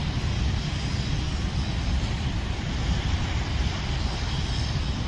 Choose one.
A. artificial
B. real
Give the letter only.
A